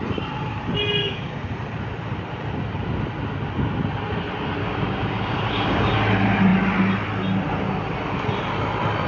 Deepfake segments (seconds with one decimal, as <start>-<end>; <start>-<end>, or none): 1.0-1.5; 4.6-5.9